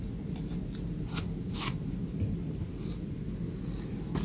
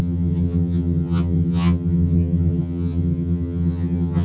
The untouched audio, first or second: first